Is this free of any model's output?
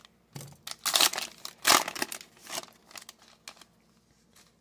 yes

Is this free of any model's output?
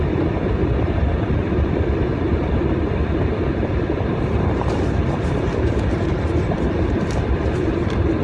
no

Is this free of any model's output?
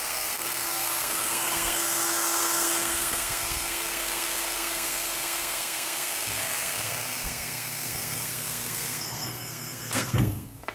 no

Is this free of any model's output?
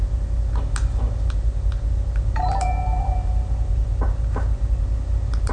yes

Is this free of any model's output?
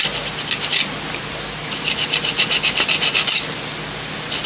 yes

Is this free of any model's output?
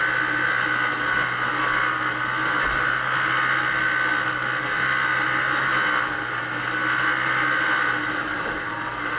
yes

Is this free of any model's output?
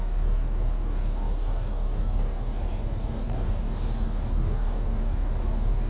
no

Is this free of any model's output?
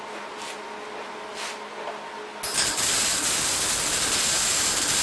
yes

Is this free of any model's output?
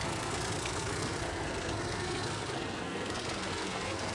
no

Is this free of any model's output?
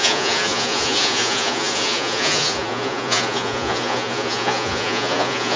no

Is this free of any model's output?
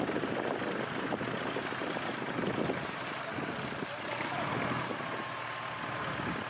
yes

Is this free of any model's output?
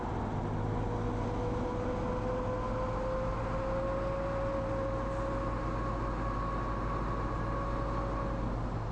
yes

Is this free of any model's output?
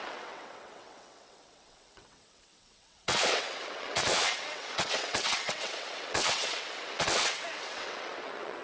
no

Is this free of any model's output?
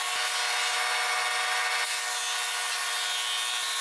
yes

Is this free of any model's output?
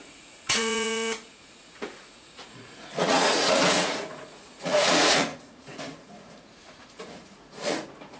no